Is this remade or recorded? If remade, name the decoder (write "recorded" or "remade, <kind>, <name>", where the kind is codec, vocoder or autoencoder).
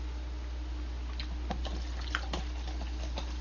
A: recorded